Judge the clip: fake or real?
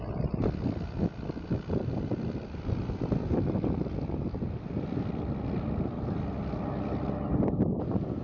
real